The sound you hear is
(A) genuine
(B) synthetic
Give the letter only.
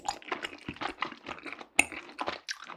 A